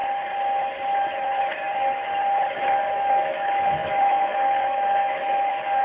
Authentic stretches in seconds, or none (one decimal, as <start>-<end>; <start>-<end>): 0.0-2.9

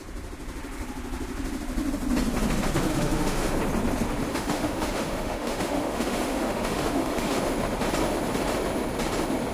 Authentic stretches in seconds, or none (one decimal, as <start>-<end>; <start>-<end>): 0.0-2.9; 3.6-4.3; 7.4-9.5

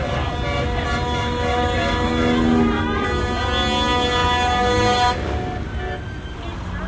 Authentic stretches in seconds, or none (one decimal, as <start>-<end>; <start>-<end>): 0.0-6.9

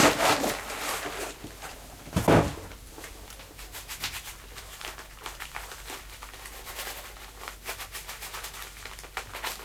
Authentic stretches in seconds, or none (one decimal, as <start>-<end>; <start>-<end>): 0.0-9.6

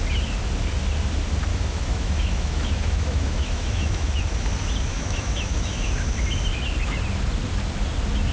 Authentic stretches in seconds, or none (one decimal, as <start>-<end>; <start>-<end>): 0.0-1.5; 4.2-4.9; 5.9-8.3

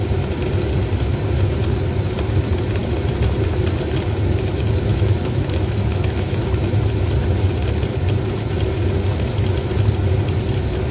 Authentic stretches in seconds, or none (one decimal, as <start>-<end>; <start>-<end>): 0.0-4.9; 6.4-10.9